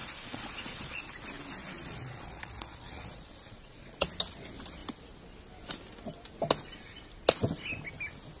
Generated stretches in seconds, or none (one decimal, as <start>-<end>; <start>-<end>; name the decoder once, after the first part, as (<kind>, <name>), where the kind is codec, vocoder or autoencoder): 0.0-1.0 (vocoder, Vocos); 1.6-4.1